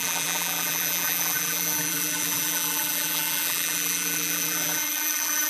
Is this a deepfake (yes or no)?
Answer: yes